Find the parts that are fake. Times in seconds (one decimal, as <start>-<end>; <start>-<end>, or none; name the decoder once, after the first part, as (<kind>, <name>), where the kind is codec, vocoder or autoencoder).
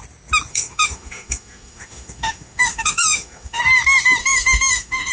0.5-3.6 (autoencoder, DAC-VAE); 4.2-5.1